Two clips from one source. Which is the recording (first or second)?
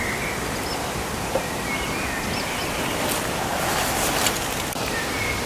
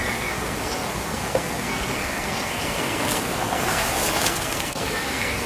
first